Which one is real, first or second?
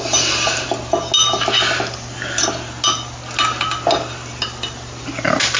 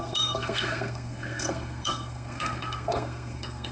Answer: first